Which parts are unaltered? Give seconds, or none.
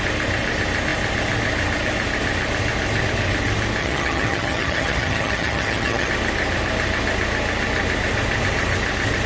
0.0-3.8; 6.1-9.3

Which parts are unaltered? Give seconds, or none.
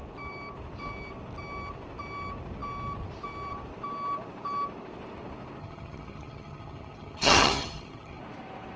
0.0-5.6; 8.2-8.8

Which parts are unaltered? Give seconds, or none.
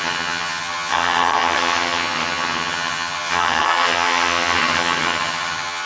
none